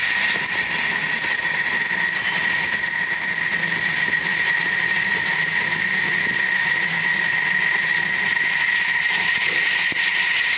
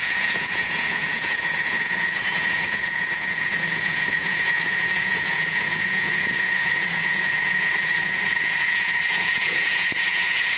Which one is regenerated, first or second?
second